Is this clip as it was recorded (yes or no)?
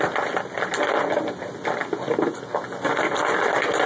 yes